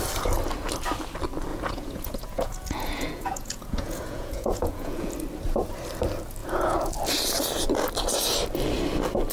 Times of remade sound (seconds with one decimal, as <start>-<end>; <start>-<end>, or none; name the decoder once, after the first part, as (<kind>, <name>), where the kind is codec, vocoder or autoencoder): 1.5-5.1 (vocoder, Vocos); 6.4-6.9